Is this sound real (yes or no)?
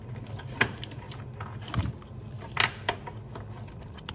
yes